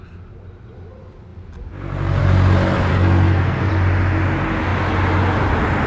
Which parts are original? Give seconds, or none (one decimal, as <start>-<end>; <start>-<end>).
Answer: 0.0-2.9; 3.7-5.9